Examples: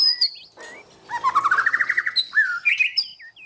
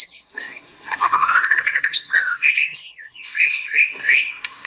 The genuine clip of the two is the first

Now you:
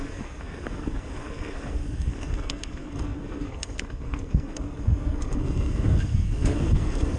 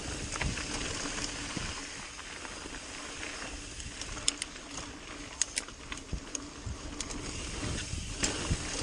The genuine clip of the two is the second